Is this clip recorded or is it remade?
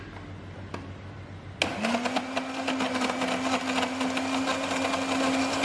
recorded